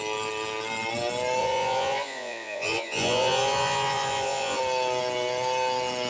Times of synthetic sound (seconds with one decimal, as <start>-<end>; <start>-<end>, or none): 1.4-4.6